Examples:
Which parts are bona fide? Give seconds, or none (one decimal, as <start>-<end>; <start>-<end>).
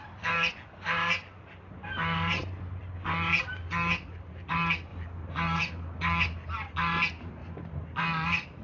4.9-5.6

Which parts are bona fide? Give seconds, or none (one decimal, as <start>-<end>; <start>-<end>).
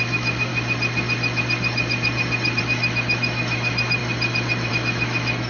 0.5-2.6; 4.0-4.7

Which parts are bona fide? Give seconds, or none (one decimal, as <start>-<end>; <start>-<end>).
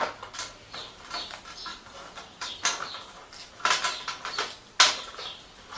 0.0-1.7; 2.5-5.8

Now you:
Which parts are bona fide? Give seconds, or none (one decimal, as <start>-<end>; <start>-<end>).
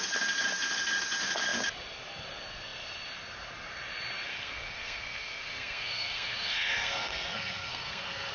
0.0-4.3